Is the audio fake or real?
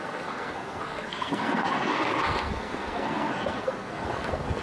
fake